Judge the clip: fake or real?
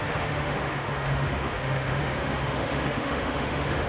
fake